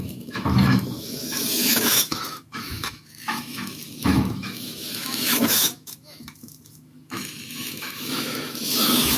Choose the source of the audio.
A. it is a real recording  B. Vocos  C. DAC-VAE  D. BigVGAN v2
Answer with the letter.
C